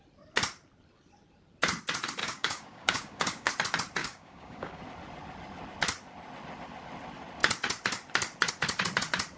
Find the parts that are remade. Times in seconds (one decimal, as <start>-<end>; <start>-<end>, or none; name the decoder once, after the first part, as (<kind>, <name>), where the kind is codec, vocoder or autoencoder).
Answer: 2.2-3.5 (codec, DAC); 4.0-4.8